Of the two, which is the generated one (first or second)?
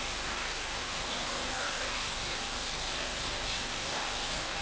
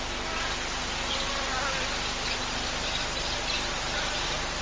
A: first